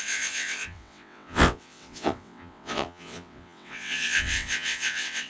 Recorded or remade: remade